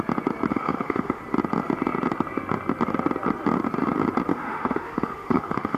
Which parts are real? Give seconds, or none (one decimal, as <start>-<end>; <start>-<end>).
0.0-0.5; 1.2-4.3